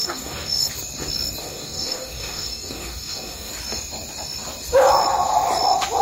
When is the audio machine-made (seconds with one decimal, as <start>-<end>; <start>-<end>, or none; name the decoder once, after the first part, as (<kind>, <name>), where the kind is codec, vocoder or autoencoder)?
0.0-0.7 (codec, DAC); 1.4-3.5